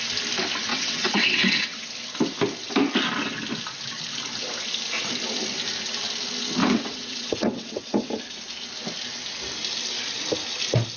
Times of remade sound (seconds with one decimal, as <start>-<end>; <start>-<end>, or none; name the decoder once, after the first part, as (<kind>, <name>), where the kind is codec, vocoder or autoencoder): 0.7-1.8 (vocoder, WaveNeXt); 6.6-8.1

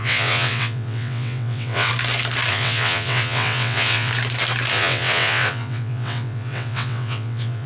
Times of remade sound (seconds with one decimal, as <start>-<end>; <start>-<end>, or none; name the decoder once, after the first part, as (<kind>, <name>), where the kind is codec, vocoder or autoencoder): 0.0-1.9 (vocoder, WaveNeXt); 2.5-4.1; 4.7-7.7

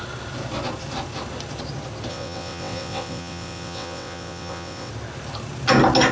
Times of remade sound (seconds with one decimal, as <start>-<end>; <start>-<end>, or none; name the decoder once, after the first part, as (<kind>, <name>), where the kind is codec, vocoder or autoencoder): 2.1-4.9 (vocoder, WaveNeXt)

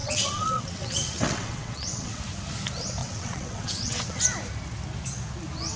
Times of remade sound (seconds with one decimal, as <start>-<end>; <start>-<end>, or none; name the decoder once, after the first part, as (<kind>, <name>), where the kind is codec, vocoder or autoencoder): 0.0-2.2 (vocoder, WaveNeXt); 3.0-4.2

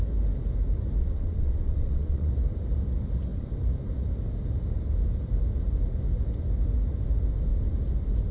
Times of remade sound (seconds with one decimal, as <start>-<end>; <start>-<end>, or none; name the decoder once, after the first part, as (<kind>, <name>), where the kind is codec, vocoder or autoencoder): 1.0-2.3 (vocoder, WaveNeXt)

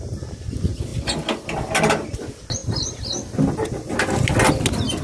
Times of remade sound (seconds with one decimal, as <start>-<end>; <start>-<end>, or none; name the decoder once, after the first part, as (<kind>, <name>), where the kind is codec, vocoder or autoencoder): none

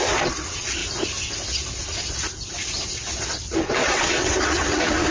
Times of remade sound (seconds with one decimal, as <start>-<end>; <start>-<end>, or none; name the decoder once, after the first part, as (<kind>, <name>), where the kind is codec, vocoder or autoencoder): 0.0-0.8 (vocoder, WaveNeXt); 3.6-5.1

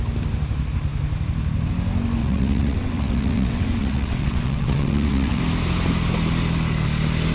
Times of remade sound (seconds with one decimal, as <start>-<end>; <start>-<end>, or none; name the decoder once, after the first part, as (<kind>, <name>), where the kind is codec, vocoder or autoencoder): 2.2-5.4 (vocoder, WaveNeXt)